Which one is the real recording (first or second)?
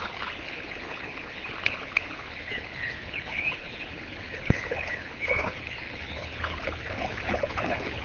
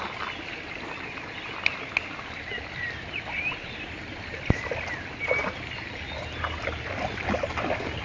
second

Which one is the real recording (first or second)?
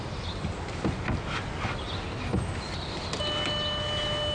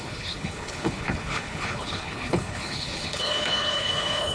first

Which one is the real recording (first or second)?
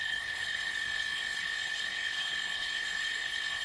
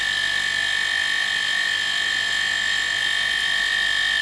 second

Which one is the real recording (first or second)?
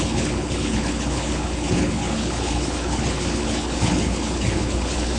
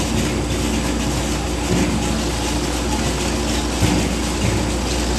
second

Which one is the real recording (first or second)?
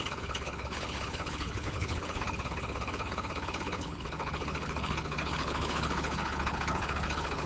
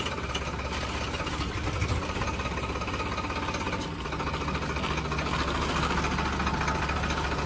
second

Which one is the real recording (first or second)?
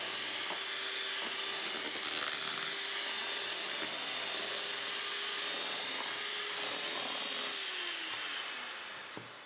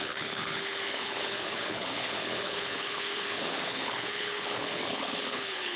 first